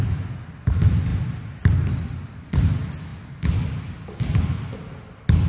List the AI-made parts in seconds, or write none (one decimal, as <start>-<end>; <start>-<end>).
none